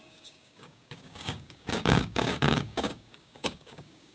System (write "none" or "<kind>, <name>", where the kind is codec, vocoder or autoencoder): codec, DAC